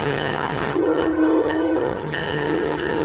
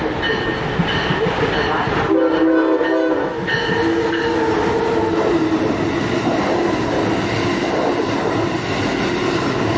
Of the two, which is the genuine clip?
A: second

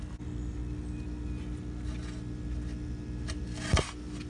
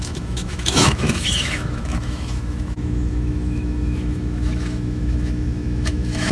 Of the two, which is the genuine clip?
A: first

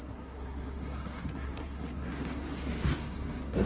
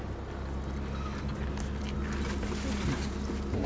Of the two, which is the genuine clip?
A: second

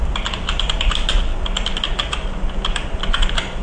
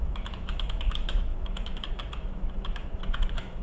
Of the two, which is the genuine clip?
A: first